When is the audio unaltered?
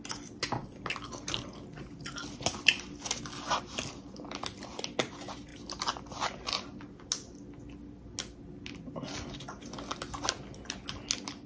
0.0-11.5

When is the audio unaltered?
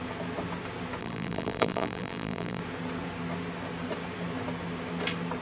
0.0-1.0; 2.6-5.4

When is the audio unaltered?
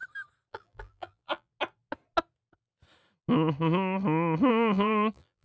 0.0-0.5; 1.5-4.5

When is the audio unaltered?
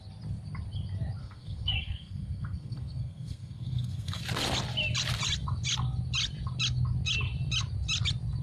0.0-1.2; 4.2-8.4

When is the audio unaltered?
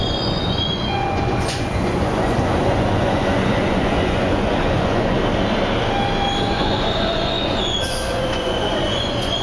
5.2-6.5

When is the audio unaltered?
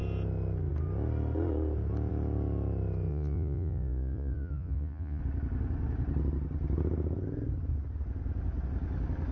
0.0-3.1; 5.2-9.3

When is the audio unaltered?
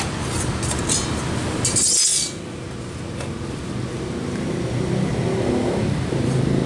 0.0-6.7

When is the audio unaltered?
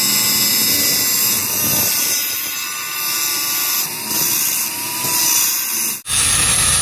0.0-6.8